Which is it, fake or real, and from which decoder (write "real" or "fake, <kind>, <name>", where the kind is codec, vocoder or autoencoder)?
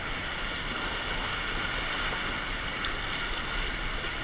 real